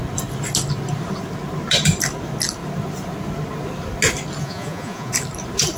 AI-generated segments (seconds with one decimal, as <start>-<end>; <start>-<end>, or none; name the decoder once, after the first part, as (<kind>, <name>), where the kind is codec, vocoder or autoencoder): 4.4-5.1 (vocoder, Vocos)